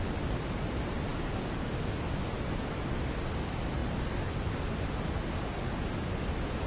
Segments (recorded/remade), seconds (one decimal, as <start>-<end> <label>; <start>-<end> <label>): 0.0-3.8 recorded; 3.8-4.9 remade; 4.9-6.7 recorded